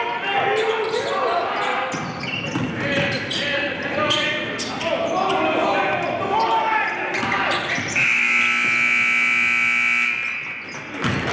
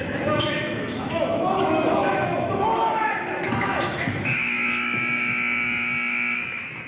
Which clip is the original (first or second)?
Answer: first